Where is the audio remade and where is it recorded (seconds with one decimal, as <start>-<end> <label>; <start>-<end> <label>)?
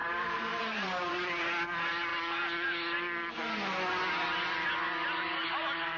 0.0-1.4 remade; 1.4-6.0 recorded